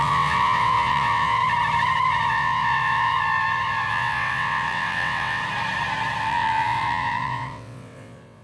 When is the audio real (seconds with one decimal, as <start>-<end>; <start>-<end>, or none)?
1.4-2.3; 3.1-3.9; 5.4-6.2